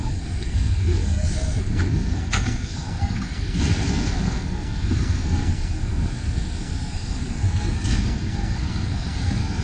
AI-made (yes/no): yes